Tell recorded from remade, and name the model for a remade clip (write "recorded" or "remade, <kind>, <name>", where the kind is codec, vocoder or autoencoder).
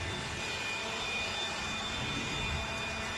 recorded